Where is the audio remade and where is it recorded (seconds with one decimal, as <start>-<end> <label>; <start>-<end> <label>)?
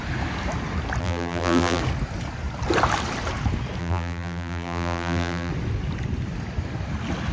0.0-1.0 recorded; 1.0-1.8 remade; 1.8-3.8 recorded; 3.8-5.5 remade; 5.5-7.3 recorded